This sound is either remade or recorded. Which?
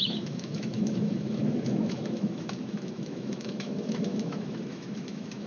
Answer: remade